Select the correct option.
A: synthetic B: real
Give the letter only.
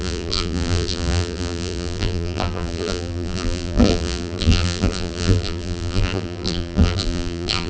A